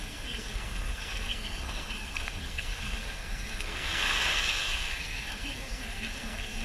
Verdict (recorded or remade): remade